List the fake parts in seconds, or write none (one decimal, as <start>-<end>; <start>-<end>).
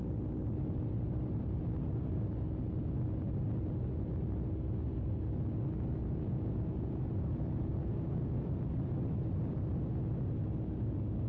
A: 6.0-8.4